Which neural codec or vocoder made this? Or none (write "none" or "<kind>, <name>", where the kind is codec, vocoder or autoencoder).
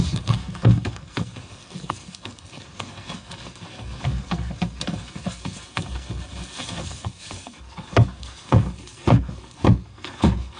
codec, SNAC